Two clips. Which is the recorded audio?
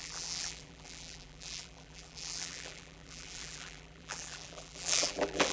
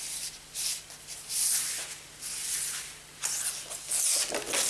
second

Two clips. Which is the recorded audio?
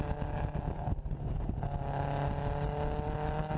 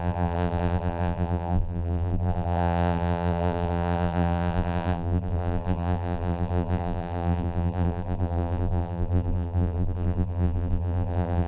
first